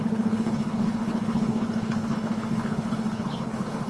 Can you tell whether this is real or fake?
fake